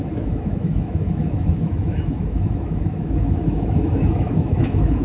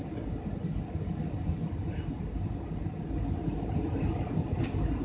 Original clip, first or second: second